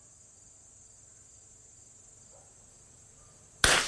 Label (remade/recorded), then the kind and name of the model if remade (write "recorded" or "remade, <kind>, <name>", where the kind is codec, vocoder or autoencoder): recorded